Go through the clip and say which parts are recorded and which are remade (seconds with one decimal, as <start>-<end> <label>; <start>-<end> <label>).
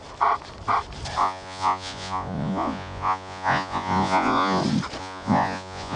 0.0-1.2 recorded; 1.2-4.6 remade; 4.6-5.0 recorded; 5.0-6.0 remade